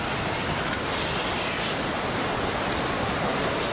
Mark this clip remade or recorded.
recorded